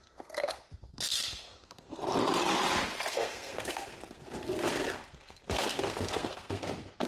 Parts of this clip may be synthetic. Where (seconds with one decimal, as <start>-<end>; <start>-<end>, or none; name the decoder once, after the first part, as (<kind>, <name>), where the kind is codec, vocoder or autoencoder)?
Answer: 0.0-2.0 (codec, SNAC); 3.1-7.1